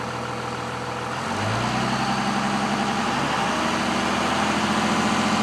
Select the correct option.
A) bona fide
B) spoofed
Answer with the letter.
A